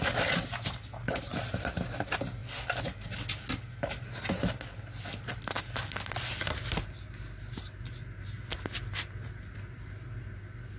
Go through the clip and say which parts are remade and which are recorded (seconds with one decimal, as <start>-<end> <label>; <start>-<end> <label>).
0.0-10.8 recorded